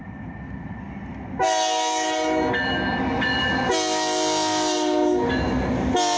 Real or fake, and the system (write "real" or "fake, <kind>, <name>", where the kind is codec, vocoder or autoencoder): real